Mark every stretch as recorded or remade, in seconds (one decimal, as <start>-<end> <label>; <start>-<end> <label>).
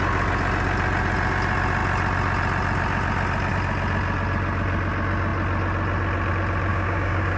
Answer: 0.0-6.7 recorded; 6.7-7.4 remade